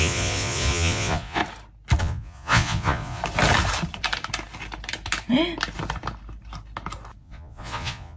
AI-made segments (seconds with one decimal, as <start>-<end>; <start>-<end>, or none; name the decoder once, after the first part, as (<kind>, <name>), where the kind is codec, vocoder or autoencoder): 0.0-1.4 (vocoder, Vocos); 2.0-3.2; 7.2-8.2

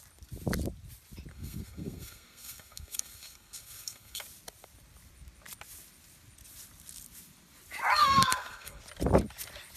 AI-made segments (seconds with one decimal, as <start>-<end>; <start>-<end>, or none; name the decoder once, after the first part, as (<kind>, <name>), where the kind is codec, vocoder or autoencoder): 1.3-4.2 (codec, SNAC); 8.0-8.8

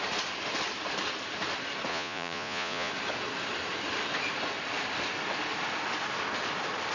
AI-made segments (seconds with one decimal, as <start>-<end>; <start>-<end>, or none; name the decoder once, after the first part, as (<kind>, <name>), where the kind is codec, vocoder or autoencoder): 1.9-2.9 (vocoder, Vocos)

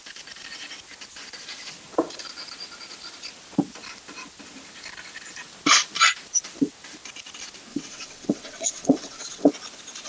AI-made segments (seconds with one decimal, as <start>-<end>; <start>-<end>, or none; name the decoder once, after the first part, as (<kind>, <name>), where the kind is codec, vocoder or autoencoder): 7.7-9.5 (vocoder, WaveNeXt)